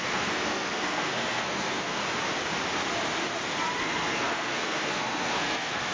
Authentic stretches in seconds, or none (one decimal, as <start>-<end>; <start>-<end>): 2.0-3.8